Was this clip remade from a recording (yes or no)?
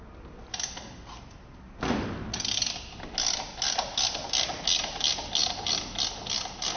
no